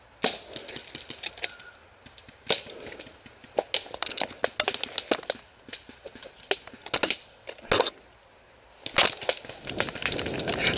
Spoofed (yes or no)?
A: no